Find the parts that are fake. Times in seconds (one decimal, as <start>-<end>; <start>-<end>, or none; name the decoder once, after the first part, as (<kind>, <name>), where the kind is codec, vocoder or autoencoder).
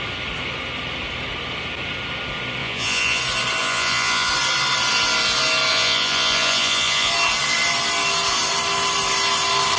2.6-3.2 (vocoder, Vocos); 3.6-4.3; 5.7-7.1